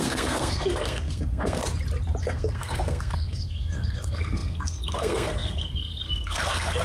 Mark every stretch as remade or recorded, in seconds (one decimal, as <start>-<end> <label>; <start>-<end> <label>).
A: 0.0-1.6 remade; 1.6-2.2 recorded; 2.2-6.8 remade